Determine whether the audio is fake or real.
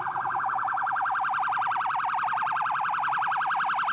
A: real